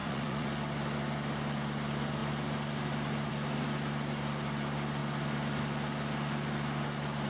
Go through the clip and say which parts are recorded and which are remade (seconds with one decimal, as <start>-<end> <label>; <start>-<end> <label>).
0.0-0.5 remade; 0.5-7.3 recorded